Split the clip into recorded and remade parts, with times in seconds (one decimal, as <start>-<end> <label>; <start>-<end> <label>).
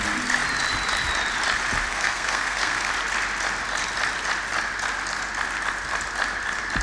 0.0-1.9 recorded; 1.9-2.9 remade; 2.9-6.8 recorded